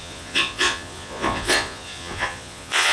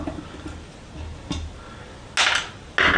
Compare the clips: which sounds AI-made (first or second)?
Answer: first